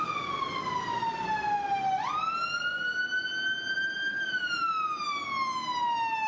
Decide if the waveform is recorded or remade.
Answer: recorded